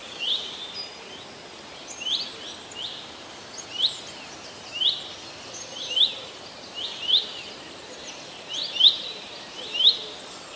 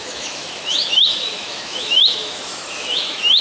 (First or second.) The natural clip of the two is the first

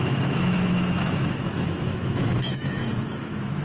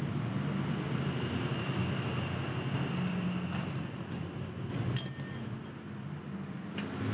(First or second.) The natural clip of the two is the second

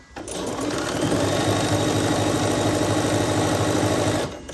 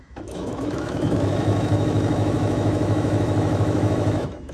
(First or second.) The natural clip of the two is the first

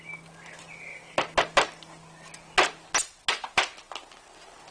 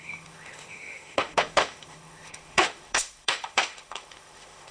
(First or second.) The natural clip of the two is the first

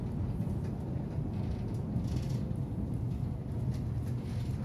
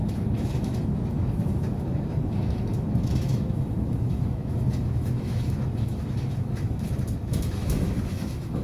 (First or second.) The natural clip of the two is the first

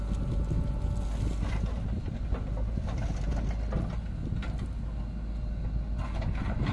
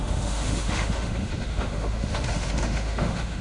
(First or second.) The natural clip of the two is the first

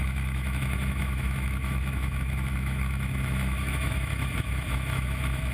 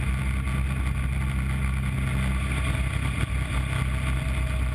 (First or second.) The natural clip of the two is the second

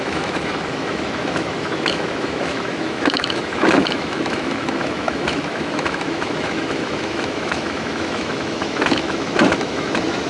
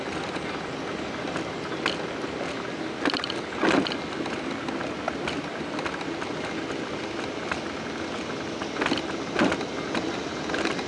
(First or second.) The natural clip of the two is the second